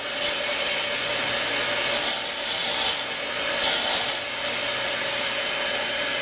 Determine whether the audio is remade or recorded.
recorded